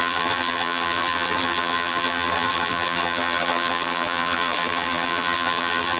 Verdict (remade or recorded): remade